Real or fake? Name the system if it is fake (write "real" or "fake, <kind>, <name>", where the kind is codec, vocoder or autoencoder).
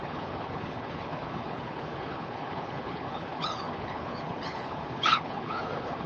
fake, codec, HILCodec